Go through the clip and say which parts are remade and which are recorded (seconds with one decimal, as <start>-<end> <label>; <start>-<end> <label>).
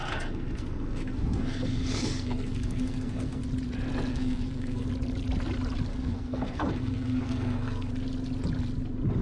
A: 0.0-3.4 remade; 3.4-4.1 recorded; 4.1-4.9 remade; 4.9-5.9 recorded; 5.9-7.9 remade; 7.9-9.2 recorded